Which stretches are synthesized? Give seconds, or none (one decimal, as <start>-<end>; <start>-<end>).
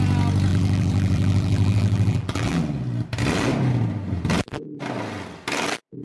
0.5-2.6